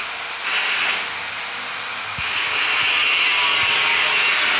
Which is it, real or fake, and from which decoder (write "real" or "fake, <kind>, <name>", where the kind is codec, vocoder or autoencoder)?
real